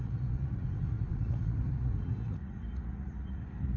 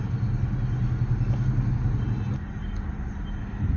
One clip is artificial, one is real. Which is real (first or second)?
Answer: second